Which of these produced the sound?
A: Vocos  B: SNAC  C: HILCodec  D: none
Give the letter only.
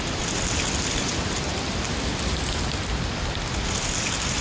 D